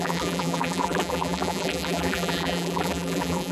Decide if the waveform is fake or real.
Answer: fake